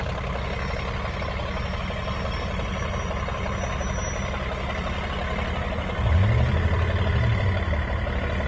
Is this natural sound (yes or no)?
yes